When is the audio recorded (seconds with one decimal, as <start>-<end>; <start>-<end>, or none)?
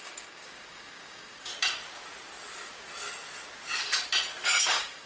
1.5-4.6